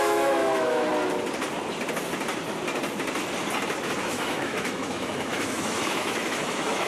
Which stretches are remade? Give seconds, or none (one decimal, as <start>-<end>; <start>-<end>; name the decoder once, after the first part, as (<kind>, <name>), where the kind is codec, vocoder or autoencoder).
0.0-0.9 (autoencoder, DAC-VAE); 4.0-6.9